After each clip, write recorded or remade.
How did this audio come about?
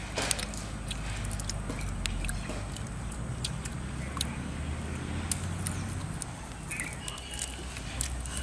recorded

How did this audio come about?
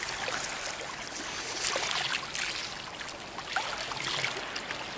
recorded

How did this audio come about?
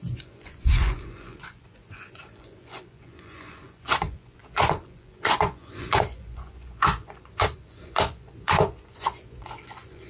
remade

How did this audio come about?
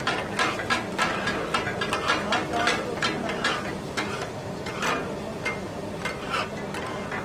recorded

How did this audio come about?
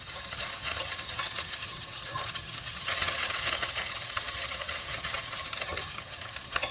remade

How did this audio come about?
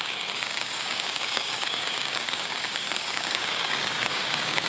remade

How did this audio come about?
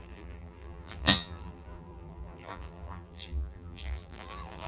remade